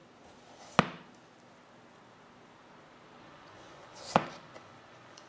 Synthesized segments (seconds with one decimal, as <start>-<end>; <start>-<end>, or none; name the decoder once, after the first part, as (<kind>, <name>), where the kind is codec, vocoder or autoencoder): 3.2-5.3 (vocoder, Vocos)